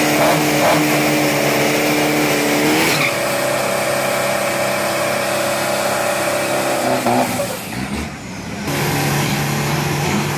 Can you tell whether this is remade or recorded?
recorded